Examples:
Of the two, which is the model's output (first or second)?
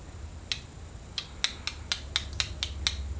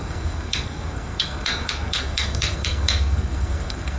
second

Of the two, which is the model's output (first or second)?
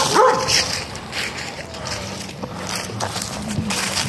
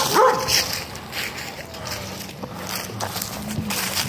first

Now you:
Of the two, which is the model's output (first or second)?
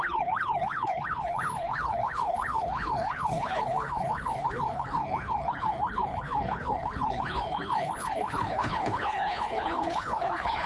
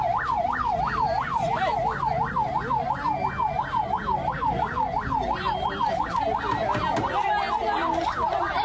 first